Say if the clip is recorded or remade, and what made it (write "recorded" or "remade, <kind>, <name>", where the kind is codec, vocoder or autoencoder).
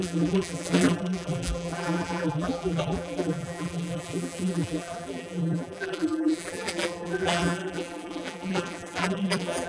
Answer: remade, vocoder, BigVGAN v2